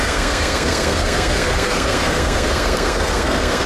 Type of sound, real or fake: fake